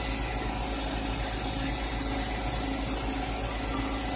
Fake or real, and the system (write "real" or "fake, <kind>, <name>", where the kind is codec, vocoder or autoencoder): real